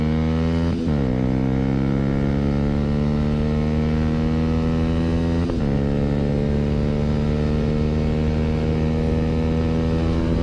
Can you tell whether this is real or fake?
real